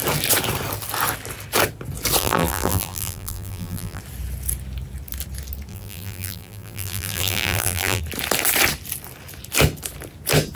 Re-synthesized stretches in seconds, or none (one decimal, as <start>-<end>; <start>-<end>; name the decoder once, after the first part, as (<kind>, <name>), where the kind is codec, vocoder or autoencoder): 2.2-4.0 (vocoder, BigVGAN v2); 5.7-8.0